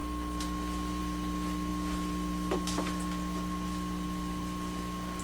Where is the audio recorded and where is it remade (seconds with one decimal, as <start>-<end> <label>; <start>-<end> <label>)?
0.0-1.7 recorded; 1.7-4.8 remade; 4.8-5.2 recorded